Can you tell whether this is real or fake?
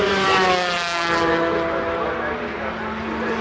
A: real